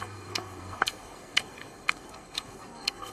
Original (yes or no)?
no